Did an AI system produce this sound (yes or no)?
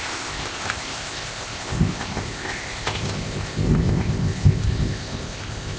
yes